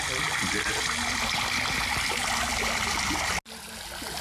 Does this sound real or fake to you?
real